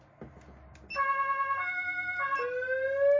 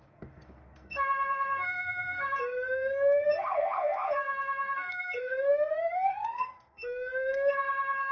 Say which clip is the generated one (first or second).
second